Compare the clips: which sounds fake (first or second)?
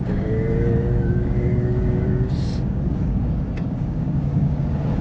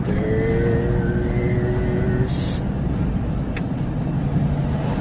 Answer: first